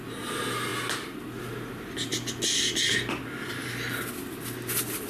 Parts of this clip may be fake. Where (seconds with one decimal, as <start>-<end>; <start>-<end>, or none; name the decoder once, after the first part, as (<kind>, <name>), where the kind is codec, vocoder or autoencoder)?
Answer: none